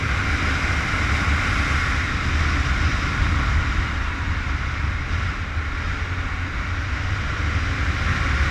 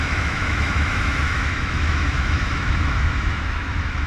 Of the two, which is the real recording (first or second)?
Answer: first